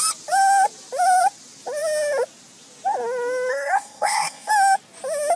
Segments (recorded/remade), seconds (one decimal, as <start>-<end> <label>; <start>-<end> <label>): 0.0-3.5 recorded; 3.5-4.5 remade; 4.5-5.4 recorded